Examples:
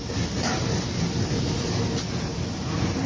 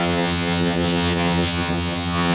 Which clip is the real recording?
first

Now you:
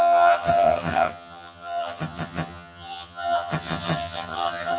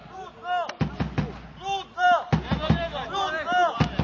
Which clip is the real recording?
second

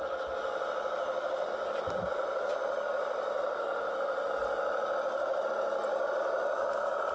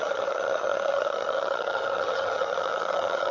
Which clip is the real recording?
first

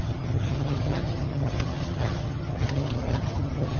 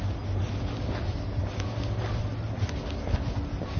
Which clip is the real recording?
second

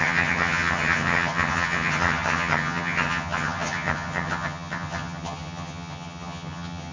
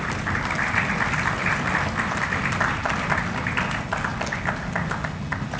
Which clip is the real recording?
second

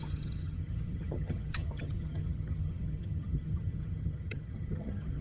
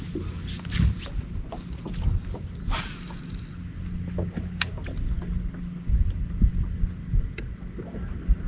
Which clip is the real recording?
second